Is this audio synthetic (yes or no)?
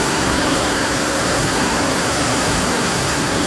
yes